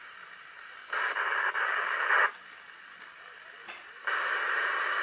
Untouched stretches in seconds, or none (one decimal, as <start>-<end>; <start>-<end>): 0.8-3.8